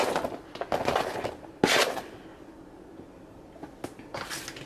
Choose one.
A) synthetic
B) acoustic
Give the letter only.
B